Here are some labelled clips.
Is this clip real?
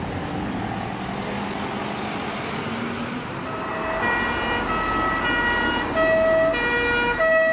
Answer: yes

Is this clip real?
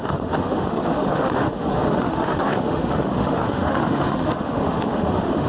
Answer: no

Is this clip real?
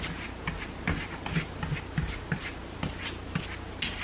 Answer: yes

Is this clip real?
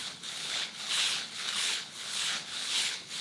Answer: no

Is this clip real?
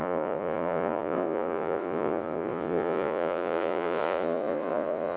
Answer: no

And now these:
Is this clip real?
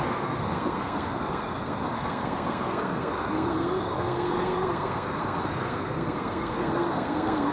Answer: no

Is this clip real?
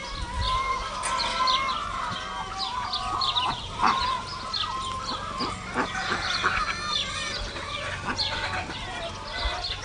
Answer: yes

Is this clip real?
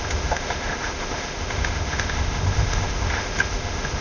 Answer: no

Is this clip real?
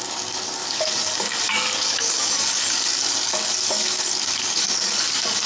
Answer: no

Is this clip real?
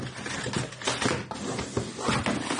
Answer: yes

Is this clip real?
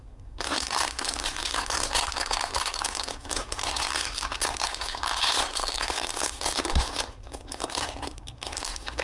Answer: no